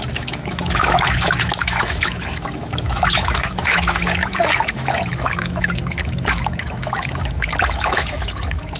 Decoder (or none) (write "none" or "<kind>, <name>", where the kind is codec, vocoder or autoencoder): autoencoder, DAC-VAE